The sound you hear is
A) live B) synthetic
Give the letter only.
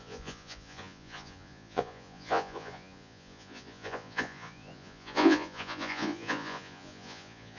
B